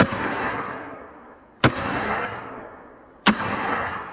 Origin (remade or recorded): remade